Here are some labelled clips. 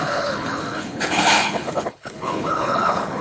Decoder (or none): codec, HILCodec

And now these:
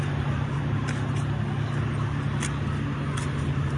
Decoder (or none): none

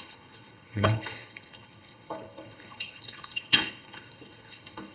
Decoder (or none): codec, HILCodec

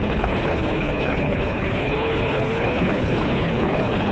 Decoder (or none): codec, HILCodec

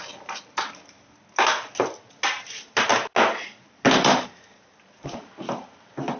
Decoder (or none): none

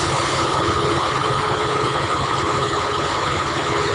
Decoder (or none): codec, HILCodec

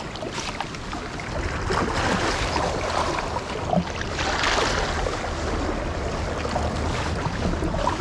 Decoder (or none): none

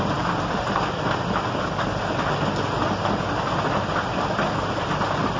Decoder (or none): none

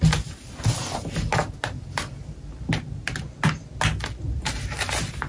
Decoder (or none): none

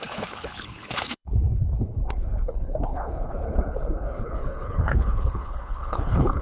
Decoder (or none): codec, HILCodec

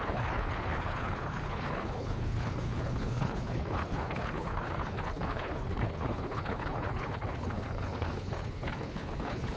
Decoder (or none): codec, HILCodec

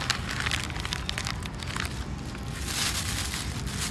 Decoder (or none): none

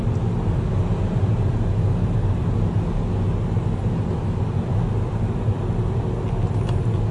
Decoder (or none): none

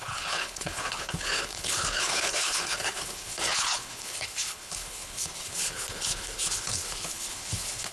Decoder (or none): codec, HILCodec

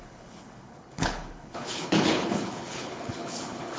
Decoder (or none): codec, HILCodec